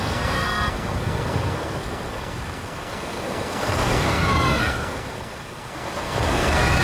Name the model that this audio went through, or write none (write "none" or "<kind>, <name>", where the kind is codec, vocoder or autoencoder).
codec, SNAC